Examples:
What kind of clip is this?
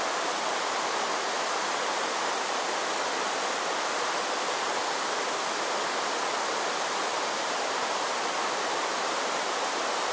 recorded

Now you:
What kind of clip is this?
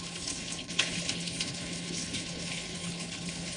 remade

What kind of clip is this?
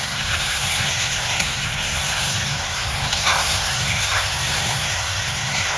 remade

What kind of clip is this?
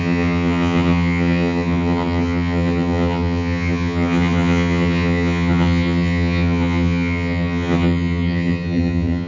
remade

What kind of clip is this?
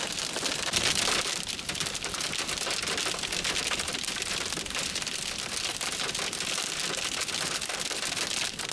recorded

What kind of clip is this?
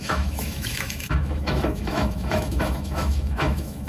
remade